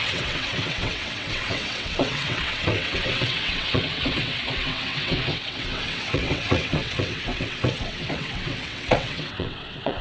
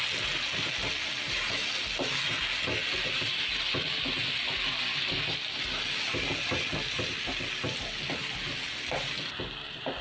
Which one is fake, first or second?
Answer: first